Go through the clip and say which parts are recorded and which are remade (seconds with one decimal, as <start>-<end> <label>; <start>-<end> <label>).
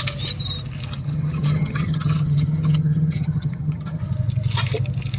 0.0-1.0 recorded; 1.0-4.0 remade; 4.0-5.2 recorded